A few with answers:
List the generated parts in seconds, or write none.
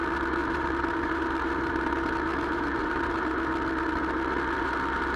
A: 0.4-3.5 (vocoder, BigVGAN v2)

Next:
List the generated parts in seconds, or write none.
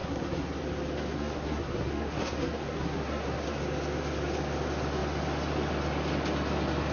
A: 0.0-0.6 (codec, SNAC); 1.1-3.6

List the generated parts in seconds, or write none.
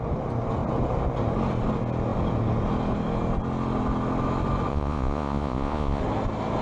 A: 4.7-6.0 (vocoder, Vocos)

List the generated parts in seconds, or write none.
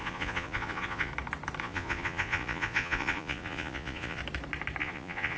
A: 0.0-1.1 (vocoder, Vocos); 1.6-4.2; 4.8-5.4